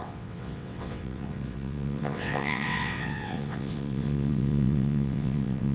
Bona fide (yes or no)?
no